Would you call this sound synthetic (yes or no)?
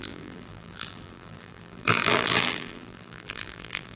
yes